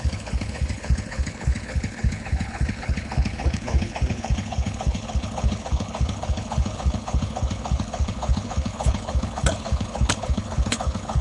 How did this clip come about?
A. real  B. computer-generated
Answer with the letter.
B